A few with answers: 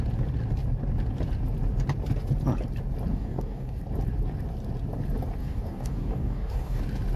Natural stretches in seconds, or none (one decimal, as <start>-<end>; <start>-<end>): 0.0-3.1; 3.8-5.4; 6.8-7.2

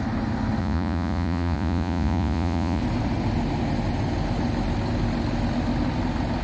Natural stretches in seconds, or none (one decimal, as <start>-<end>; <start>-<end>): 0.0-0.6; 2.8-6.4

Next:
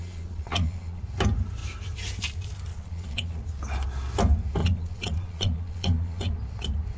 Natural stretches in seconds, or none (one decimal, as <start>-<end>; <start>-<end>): 1.0-2.7; 3.4-4.6; 6.3-7.0